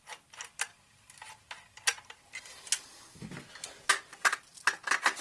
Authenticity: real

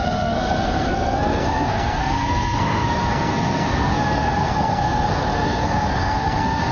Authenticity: fake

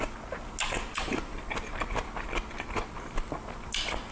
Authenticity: real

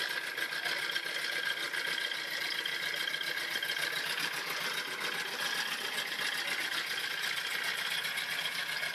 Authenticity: real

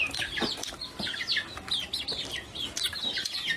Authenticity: real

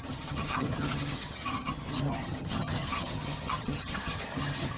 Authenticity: fake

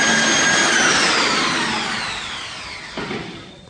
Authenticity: real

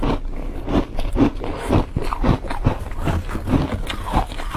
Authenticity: real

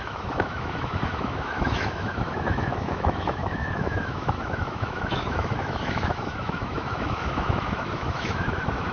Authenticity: fake